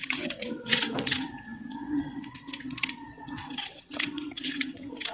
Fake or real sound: fake